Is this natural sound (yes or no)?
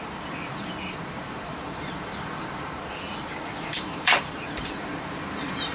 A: no